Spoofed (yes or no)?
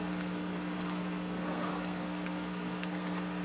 yes